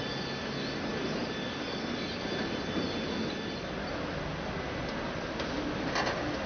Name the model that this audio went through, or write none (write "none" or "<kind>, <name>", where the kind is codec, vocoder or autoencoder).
none